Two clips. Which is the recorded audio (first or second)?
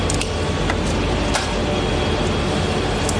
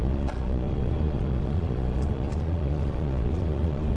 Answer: first